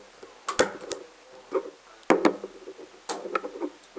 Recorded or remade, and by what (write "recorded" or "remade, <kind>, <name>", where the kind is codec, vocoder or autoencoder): recorded